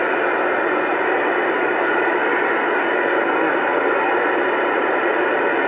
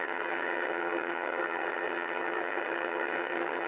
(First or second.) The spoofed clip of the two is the second